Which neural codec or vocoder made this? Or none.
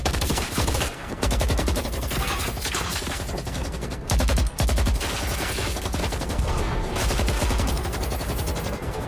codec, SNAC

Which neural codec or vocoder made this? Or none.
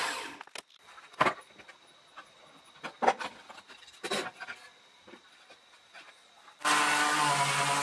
none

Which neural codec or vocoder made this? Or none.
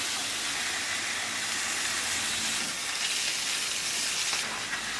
none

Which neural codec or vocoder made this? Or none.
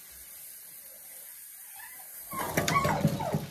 none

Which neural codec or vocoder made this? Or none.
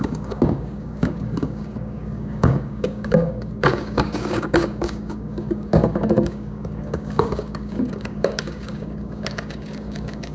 codec, DAC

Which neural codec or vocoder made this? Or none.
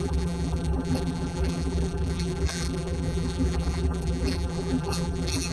vocoder, BigVGAN v2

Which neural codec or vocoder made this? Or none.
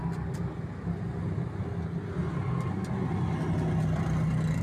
none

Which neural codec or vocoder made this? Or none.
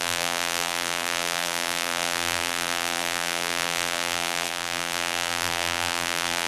vocoder, BigVGAN v2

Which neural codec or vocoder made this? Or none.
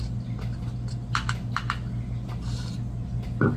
none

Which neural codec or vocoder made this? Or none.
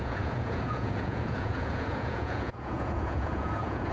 vocoder, Vocos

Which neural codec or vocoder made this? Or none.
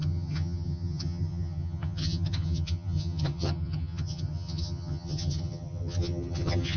vocoder, HiFi-GAN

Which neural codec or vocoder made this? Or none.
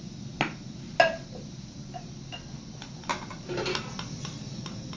none